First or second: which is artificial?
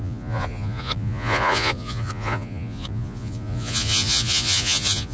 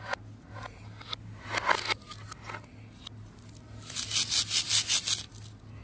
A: first